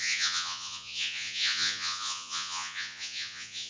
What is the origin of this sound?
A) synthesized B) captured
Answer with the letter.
A